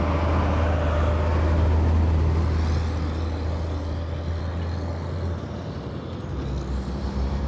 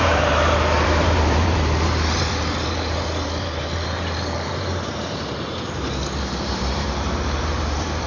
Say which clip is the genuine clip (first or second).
first